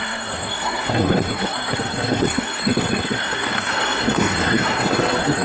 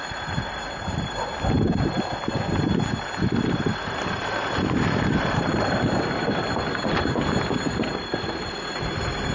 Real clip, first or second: second